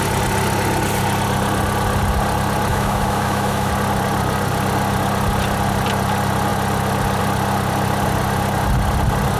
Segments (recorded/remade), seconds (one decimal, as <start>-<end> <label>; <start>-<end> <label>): 0.0-2.7 recorded; 2.7-3.7 remade; 3.7-9.4 recorded